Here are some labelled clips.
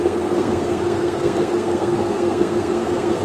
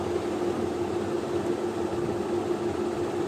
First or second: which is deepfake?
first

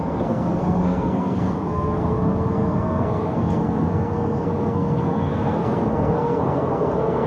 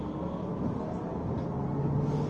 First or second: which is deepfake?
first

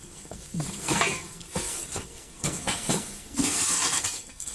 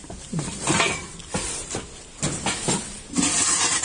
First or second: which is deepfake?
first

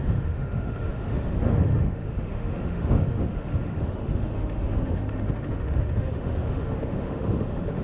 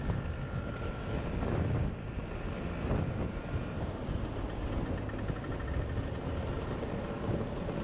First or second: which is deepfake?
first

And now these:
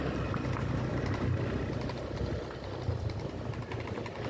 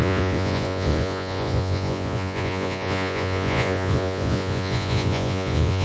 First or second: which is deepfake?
second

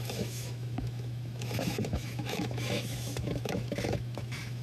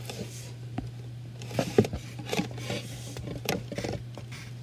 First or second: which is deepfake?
first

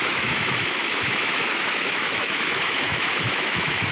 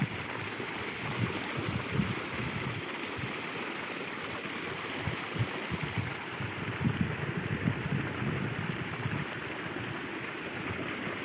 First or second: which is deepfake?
first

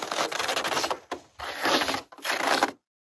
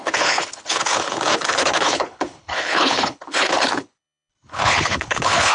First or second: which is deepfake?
second